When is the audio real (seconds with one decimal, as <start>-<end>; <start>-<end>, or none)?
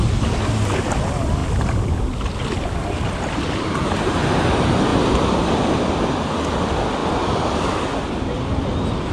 0.0-4.9; 5.6-7.0; 8.1-9.1